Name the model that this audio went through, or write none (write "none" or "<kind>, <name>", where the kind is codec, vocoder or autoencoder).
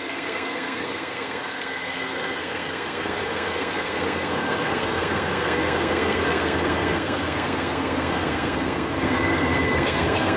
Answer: codec, SNAC